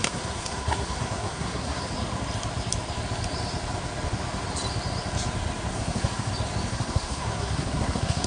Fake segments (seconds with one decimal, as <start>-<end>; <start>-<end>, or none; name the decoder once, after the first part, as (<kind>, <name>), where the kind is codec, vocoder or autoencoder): 0.0-1.8 (codec, SNAC); 5.7-6.3; 6.7-8.3